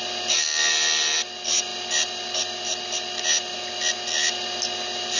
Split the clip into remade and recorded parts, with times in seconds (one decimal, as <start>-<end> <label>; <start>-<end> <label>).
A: 0.0-5.2 recorded